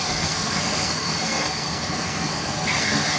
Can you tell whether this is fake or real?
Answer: fake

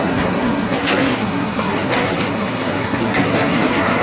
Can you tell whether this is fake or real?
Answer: fake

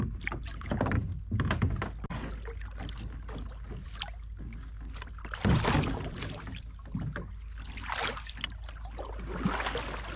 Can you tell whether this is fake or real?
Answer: real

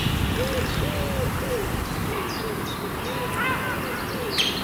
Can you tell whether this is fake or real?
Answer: real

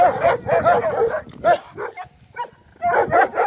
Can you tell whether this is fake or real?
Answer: real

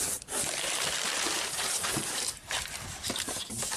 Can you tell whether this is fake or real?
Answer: real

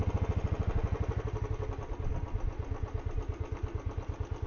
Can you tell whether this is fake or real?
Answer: real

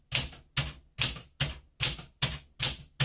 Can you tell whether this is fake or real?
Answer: real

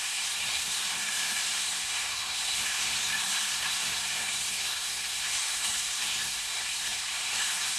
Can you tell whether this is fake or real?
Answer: fake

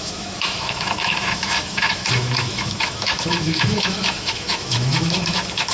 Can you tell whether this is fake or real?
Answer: fake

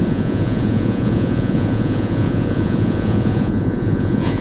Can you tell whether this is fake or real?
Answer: fake